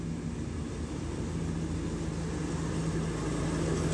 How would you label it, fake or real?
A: real